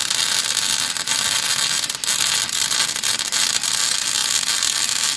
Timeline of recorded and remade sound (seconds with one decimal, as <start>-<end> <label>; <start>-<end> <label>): 0.0-5.2 recorded